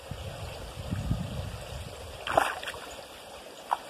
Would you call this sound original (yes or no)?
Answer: yes